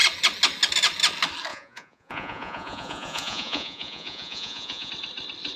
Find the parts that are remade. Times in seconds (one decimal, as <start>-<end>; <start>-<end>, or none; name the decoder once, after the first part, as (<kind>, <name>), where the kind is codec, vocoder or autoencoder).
1.5-4.9 (vocoder, Vocos)